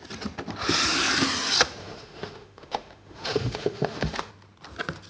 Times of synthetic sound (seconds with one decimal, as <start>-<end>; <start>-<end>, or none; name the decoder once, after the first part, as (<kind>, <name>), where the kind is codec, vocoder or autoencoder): 1.8-4.3 (autoencoder, DAC-VAE)